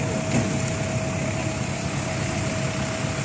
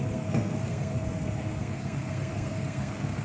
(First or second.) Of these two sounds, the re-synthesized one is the second